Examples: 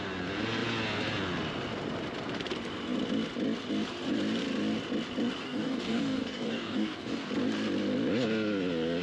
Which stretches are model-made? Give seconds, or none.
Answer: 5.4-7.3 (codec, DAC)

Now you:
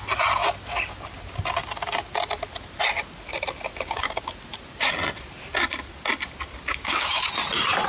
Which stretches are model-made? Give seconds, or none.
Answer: 3.7-4.3 (codec, DAC); 6.7-7.2

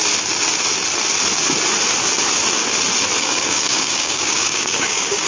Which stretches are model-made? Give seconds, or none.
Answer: 3.2-5.3 (codec, DAC)

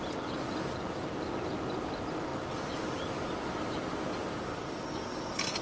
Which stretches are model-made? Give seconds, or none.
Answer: none

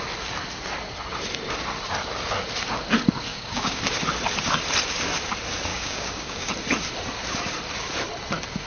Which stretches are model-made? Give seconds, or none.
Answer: 3.3-3.8 (codec, DAC); 5.7-6.5

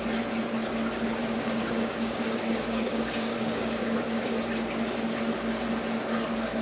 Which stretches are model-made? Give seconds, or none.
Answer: 1.2-4.2 (codec, DAC)

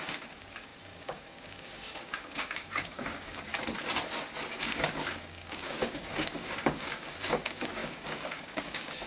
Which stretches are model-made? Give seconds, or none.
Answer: 0.0-3.5 (codec, DAC); 4.5-9.1

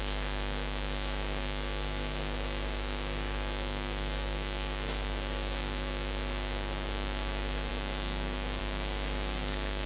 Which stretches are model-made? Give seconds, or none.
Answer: 0.0-9.9 (codec, DAC)